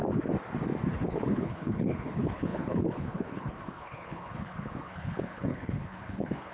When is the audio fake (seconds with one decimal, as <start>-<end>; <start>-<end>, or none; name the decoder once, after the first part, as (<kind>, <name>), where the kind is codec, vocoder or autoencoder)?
0.9-6.5 (codec, HILCodec)